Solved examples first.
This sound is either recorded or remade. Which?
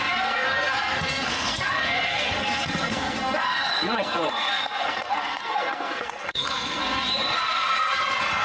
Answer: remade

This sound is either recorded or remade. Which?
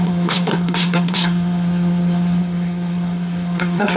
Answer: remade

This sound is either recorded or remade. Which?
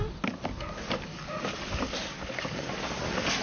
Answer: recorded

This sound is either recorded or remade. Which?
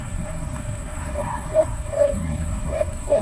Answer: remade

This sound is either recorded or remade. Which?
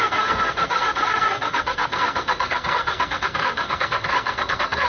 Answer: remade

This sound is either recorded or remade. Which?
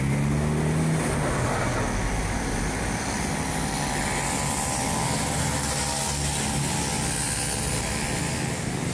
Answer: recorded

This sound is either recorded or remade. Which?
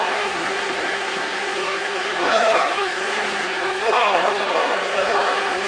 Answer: remade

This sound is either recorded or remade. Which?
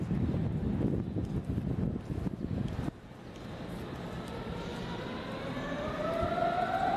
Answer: recorded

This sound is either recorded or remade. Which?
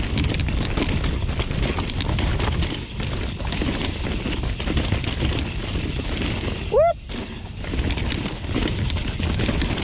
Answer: recorded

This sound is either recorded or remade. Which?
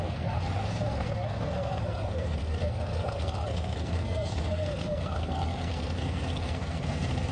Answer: remade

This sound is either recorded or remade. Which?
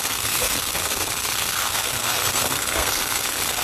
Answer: remade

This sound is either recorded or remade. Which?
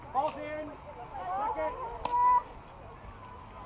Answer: recorded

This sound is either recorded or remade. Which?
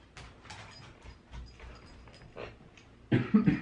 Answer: recorded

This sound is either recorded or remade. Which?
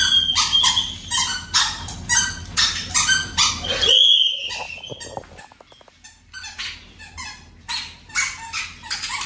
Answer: recorded